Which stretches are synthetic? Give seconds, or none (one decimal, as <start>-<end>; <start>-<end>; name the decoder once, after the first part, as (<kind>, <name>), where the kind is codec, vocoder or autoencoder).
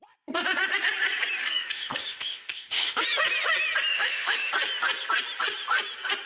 1.4-3.0 (autoencoder, DAC-VAE); 3.9-4.5